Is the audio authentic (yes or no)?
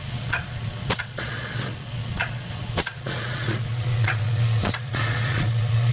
no